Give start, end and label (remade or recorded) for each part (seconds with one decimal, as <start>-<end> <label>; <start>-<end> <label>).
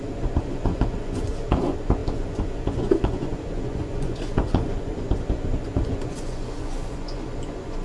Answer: 0.0-7.8 remade